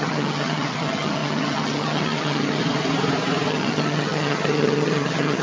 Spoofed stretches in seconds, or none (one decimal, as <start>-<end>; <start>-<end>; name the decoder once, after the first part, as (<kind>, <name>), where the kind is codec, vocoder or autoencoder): 0.0-2.6 (vocoder, HiFi-GAN); 3.5-5.4